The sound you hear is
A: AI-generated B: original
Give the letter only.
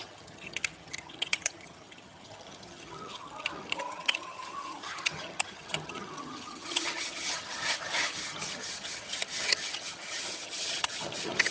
A